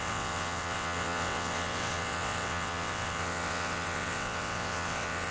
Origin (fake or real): fake